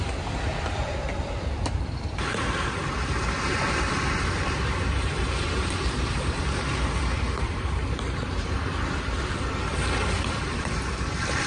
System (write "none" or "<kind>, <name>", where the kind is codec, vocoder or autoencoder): vocoder, BigVGAN v2